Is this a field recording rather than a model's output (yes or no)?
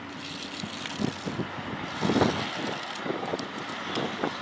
yes